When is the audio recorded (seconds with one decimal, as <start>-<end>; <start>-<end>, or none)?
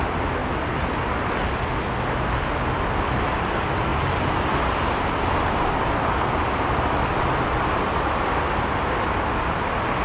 0.0-10.0